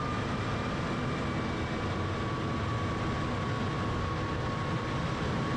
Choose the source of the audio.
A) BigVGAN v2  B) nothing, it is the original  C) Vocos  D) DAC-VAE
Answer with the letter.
B